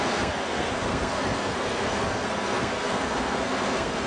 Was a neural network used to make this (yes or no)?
yes